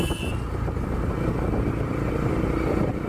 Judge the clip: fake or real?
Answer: real